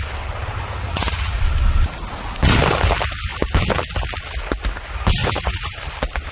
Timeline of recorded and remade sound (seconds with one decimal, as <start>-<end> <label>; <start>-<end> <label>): 0.0-0.9 recorded; 0.9-1.4 remade; 1.4-5.2 recorded; 5.2-5.8 remade; 5.8-6.3 recorded